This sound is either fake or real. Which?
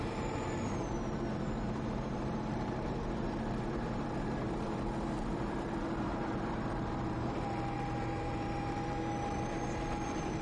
fake